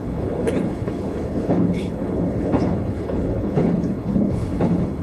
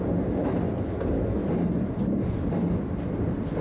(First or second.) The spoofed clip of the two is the first